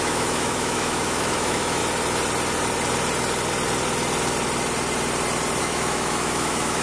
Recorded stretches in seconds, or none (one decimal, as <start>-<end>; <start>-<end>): 1.8-5.6